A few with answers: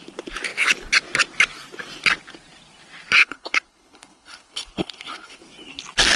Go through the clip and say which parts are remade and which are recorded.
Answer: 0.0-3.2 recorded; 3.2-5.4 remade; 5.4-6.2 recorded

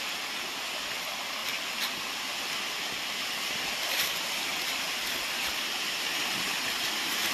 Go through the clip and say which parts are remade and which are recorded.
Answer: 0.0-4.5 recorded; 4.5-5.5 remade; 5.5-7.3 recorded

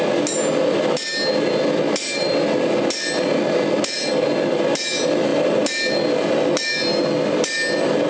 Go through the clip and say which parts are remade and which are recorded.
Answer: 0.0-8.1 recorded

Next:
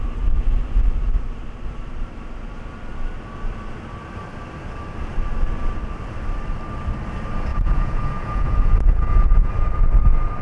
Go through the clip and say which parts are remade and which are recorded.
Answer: 0.0-7.5 recorded; 7.5-9.5 remade; 9.5-10.4 recorded